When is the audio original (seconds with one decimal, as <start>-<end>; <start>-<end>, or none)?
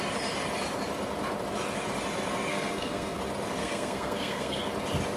0.0-2.5; 3.2-3.6; 4.6-5.2